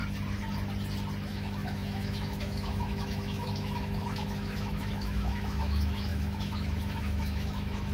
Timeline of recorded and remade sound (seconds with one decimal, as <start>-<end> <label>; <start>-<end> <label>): 0.0-1.3 recorded; 1.3-7.9 remade

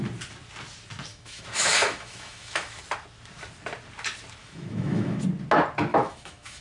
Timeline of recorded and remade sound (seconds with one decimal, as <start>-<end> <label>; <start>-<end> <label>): 0.0-1.1 recorded; 1.1-2.8 remade; 2.8-4.4 recorded; 4.4-5.2 remade; 5.2-5.9 recorded; 5.9-6.6 remade

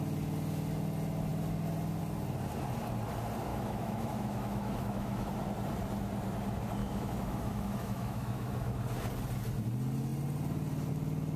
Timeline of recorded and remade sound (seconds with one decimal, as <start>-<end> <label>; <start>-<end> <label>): 0.0-3.5 recorded; 3.5-5.3 remade; 5.3-6.8 recorded; 6.8-8.8 remade; 8.8-11.4 recorded

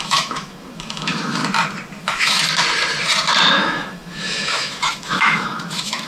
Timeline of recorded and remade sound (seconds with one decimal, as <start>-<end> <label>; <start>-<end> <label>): 0.0-1.4 remade; 1.4-2.0 recorded; 2.0-2.4 remade; 2.4-3.5 recorded; 3.5-6.1 remade

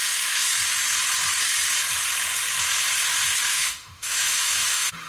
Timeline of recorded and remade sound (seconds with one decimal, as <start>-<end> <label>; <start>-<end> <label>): 0.0-0.5 remade; 0.5-3.5 recorded; 3.5-5.1 remade

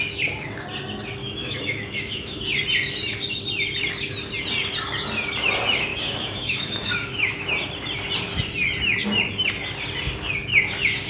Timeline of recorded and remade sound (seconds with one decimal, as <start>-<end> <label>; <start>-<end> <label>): 0.0-1.2 recorded; 1.2-2.5 remade; 2.5-5.9 recorded; 5.9-7.5 remade; 7.5-11.1 recorded

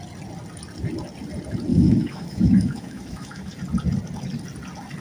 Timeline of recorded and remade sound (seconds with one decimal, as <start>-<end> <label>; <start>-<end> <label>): 0.0-1.7 recorded; 1.7-3.5 remade; 3.5-5.0 recorded